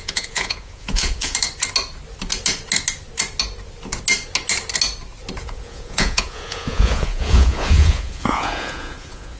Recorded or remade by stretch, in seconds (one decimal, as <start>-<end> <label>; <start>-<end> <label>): 0.0-1.3 remade; 1.3-5.4 recorded; 5.4-9.4 remade

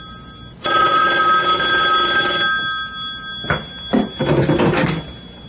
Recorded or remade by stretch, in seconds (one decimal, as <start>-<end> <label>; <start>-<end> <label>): 0.0-0.6 recorded; 0.6-1.2 remade; 1.2-5.5 recorded